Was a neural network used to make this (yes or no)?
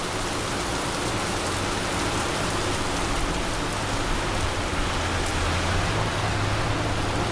no